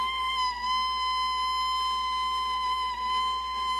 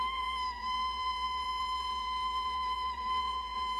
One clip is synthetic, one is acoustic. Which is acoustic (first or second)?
first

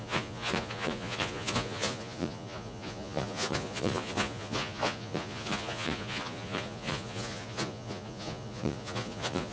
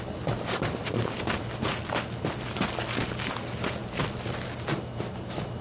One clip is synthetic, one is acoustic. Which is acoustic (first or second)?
second